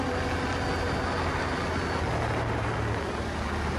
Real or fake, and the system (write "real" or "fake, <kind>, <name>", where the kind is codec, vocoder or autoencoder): real